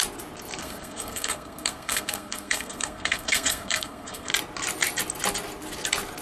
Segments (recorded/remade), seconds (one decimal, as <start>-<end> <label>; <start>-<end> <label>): 0.0-0.6 recorded; 0.6-4.3 remade; 4.3-6.2 recorded